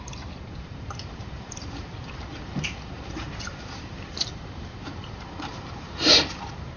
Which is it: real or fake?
fake